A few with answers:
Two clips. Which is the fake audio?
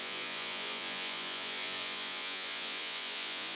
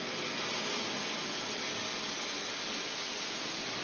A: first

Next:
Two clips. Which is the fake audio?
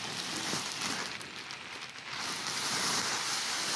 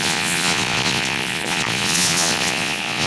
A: second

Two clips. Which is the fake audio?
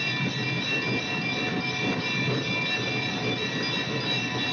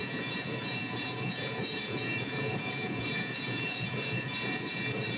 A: second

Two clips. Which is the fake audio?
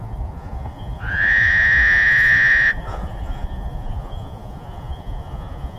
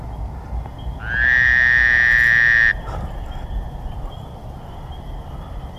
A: first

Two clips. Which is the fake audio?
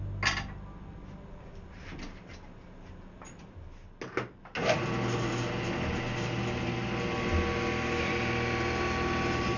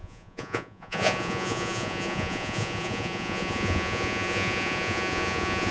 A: second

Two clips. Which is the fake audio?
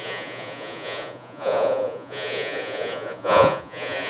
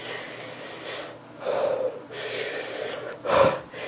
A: first